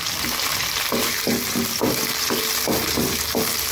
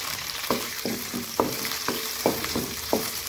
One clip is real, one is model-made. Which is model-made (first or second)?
second